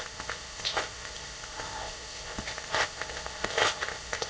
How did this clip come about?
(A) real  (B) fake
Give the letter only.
B